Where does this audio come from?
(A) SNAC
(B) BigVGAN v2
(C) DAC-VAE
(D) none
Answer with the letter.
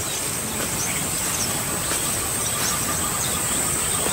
D